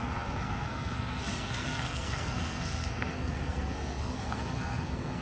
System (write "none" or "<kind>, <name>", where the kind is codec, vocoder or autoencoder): codec, SNAC